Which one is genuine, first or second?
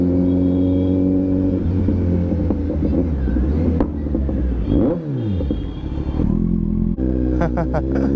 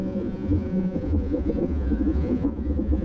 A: first